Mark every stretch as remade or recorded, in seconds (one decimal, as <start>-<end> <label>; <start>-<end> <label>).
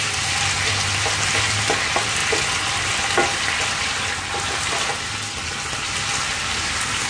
0.0-7.1 recorded